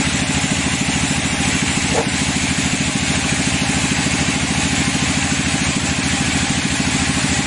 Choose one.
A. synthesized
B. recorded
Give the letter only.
B